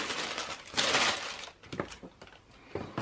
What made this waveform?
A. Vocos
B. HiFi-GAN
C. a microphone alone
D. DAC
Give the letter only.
C